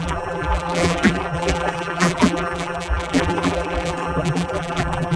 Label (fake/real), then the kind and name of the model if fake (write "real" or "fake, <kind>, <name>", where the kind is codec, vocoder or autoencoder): fake, vocoder, BigVGAN v2